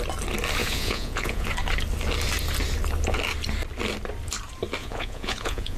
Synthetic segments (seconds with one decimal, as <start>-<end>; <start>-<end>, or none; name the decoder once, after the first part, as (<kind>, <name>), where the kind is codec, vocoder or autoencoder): 0.6-1.5 (vocoder, Vocos); 4.8-5.8